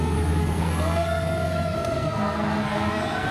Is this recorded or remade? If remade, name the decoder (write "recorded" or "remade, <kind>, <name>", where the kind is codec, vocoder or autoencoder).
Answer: remade, codec, SNAC